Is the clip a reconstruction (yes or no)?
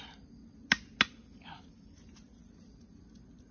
no